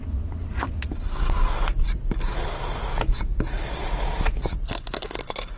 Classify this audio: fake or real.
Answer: real